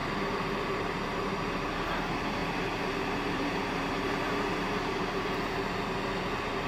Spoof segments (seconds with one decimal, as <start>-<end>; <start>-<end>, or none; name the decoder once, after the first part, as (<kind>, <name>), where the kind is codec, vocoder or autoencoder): 0.0-2.0 (vocoder, BigVGAN v2); 2.4-5.0